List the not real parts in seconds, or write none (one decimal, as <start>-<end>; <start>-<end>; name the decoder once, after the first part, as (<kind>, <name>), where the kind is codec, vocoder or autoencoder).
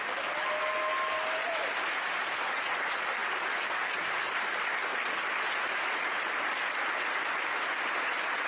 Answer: 1.4-2.6 (vocoder, BigVGAN v2)